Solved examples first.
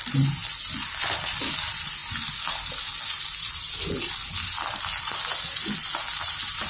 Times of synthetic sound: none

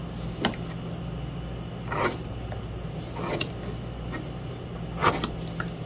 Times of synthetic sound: none

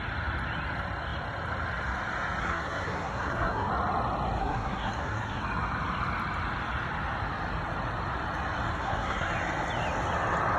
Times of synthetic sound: 2.4-3.7 (codec, SNAC); 4.4-5.4; 8.7-9.3

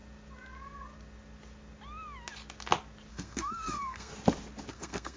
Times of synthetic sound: 3.1-4.1 (codec, SNAC); 4.7-5.2

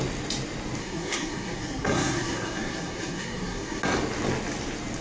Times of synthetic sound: 0.8-3.8 (codec, SNAC)

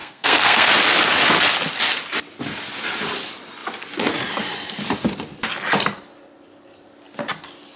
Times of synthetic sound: 0.0-0.7 (codec, SNAC)

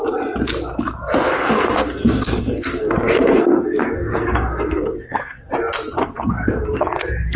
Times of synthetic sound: 1.3-5.5 (codec, SNAC); 6.0-6.8

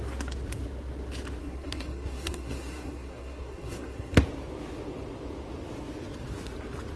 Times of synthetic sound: 1.4-4.2 (codec, SNAC)